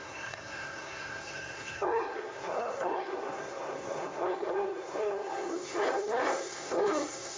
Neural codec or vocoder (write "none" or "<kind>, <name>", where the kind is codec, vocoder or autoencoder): codec, SNAC